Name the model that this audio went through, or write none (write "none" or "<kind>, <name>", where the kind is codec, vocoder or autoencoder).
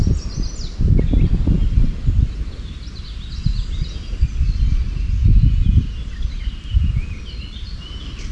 none